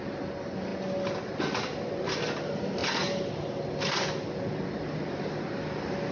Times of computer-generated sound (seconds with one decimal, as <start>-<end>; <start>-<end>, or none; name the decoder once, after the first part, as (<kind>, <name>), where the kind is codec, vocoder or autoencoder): none

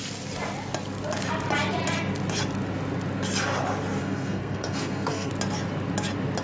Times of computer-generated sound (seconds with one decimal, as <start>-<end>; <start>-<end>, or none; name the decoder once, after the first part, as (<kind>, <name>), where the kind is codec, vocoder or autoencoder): 4.0-5.3 (codec, SNAC)

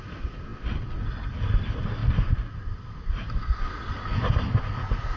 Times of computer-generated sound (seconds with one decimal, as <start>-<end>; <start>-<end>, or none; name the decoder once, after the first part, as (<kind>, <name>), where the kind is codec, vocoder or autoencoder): none

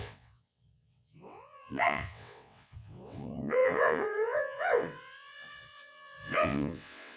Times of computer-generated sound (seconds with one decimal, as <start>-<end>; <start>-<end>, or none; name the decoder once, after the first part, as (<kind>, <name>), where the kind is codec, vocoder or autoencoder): 0.0-7.2 (vocoder, WaveNeXt)

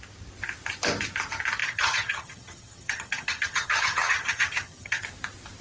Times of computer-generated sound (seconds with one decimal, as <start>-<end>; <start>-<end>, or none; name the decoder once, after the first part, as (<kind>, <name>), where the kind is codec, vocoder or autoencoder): 1.6-5.0 (vocoder, HiFi-GAN)

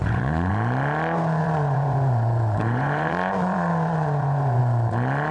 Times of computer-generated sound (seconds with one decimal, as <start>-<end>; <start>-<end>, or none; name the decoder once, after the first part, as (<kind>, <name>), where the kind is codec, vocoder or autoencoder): 0.0-0.5 (vocoder, Vocos); 1.4-4.6

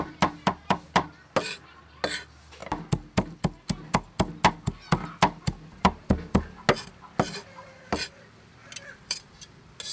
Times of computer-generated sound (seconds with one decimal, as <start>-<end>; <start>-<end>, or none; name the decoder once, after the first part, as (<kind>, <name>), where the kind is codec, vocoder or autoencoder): none

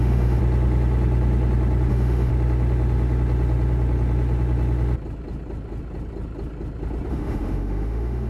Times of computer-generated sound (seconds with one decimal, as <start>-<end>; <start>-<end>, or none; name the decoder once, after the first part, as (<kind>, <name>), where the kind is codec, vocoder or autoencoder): 0.0-0.4 (autoencoder, DAC-VAE); 1.9-2.3; 7.1-8.3